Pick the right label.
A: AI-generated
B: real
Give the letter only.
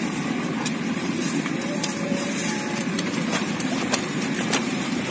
A